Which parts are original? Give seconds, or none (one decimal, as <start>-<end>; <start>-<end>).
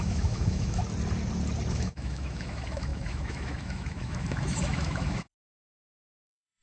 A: 0.8-1.7